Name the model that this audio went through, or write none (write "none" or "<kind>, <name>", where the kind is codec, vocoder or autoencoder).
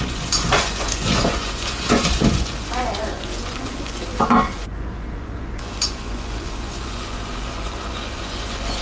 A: vocoder, Vocos